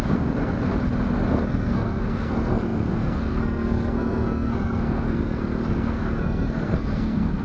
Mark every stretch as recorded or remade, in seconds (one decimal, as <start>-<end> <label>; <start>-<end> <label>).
0.0-0.7 remade; 0.7-1.3 recorded; 1.3-7.4 remade